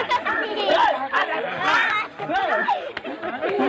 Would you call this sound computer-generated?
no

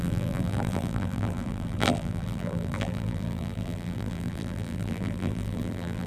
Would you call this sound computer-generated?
yes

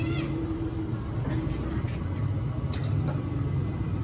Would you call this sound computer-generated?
no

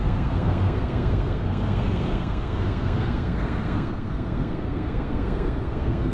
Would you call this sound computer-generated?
yes